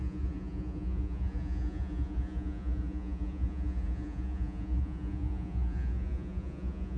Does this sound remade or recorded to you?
remade